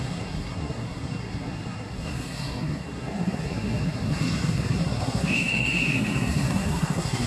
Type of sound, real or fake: fake